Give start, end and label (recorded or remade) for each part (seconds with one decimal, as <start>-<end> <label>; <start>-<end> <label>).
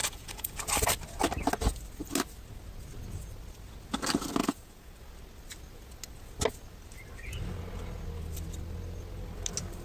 0.0-0.6 remade; 0.6-4.4 recorded; 4.4-5.0 remade; 5.0-9.8 recorded